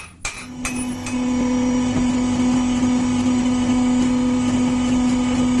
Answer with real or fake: real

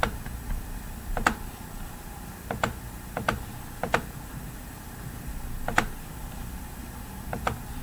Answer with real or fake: fake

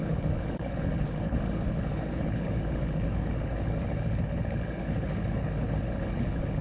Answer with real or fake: fake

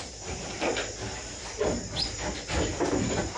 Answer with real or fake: real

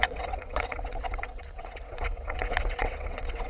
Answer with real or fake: fake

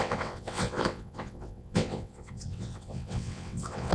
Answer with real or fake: fake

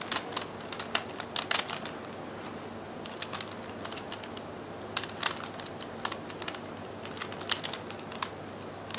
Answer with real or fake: real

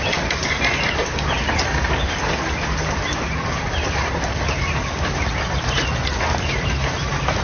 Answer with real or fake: real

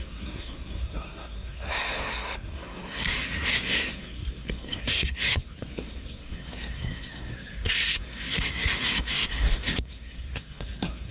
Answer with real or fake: fake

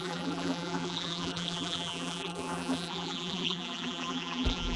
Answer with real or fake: fake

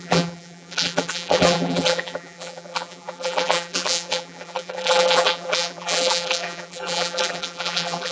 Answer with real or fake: fake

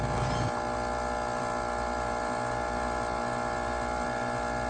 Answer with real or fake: real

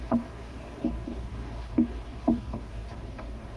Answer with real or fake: fake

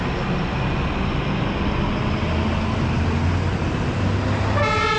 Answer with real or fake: real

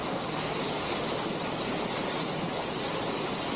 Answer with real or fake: real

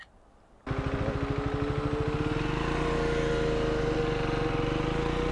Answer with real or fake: real